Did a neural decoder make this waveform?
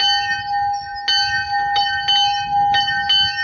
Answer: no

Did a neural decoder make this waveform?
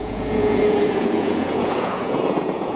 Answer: yes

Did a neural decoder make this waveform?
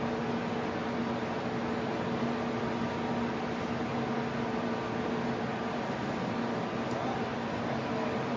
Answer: no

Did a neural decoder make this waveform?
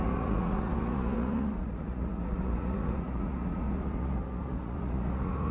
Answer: yes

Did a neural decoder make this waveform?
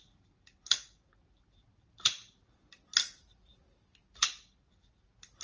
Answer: no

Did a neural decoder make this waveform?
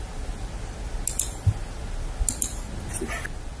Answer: no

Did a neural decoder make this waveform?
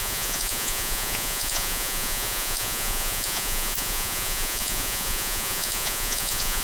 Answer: yes